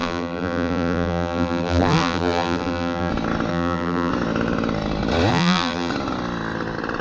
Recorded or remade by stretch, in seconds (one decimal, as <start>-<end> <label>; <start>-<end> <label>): 0.0-3.1 remade; 3.1-3.5 recorded; 3.5-4.1 remade; 4.1-5.3 recorded; 5.3-5.9 remade; 5.9-7.0 recorded

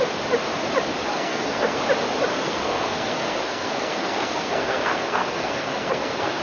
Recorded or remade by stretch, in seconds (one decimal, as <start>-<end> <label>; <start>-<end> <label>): 0.0-1.1 recorded; 1.1-1.8 remade; 1.8-2.3 recorded; 2.3-6.4 remade

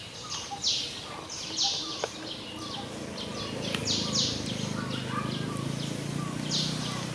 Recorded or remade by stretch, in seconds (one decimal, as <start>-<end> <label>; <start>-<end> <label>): 0.0-7.1 recorded